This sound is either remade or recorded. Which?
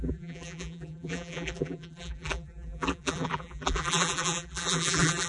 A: remade